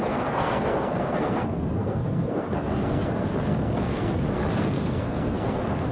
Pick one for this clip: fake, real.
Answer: fake